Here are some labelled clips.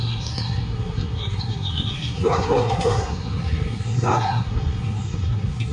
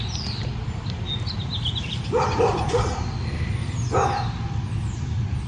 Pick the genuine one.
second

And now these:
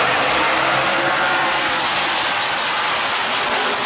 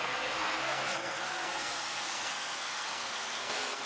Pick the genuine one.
first